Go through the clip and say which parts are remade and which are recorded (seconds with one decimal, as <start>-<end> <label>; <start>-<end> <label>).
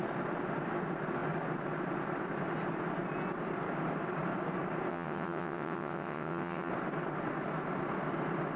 0.0-4.9 recorded; 4.9-6.7 remade; 6.7-8.6 recorded